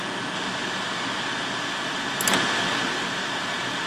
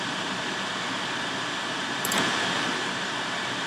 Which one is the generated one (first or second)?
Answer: second